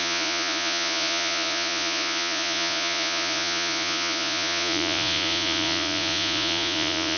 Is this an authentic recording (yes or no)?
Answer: no